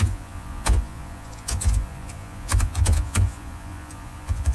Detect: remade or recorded remade